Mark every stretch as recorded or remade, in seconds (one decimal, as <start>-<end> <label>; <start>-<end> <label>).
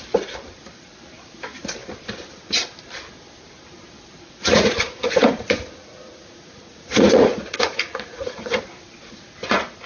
0.0-4.4 recorded; 4.4-8.6 remade; 8.6-9.9 recorded